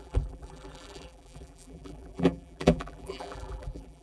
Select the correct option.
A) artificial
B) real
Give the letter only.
A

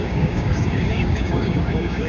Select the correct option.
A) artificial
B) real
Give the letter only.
A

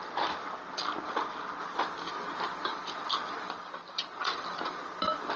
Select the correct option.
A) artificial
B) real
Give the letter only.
B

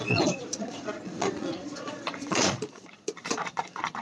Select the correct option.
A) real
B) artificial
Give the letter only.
B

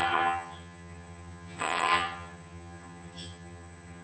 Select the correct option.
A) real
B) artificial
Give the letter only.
B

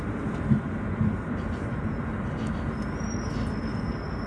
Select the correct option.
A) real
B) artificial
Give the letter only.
A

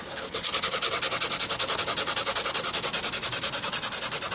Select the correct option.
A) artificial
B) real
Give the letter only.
B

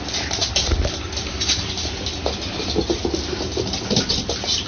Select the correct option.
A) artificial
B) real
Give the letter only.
A